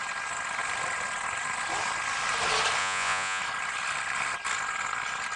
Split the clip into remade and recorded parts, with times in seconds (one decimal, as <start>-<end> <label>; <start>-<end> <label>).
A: 0.0-2.8 recorded; 2.8-3.4 remade; 3.4-5.4 recorded